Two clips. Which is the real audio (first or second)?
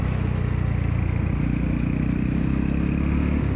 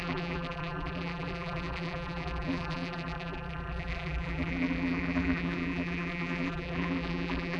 first